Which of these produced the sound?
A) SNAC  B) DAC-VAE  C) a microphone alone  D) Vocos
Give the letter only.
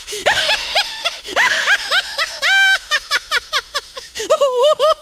B